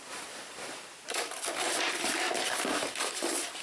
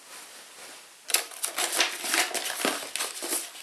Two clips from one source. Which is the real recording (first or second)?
second